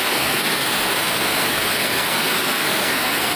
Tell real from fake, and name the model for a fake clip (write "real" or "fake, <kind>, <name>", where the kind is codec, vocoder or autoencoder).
fake, codec, SNAC